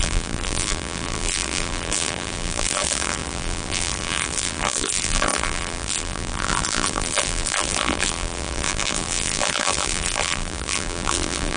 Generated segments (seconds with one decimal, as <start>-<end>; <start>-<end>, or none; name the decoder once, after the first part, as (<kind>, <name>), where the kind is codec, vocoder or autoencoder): 0.0-11.6 (vocoder, BigVGAN v2)